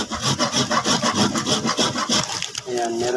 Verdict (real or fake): real